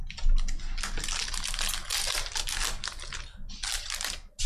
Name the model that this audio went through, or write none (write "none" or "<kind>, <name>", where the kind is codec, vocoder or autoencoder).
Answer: none